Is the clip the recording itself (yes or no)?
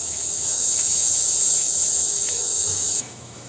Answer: no